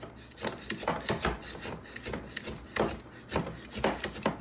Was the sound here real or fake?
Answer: real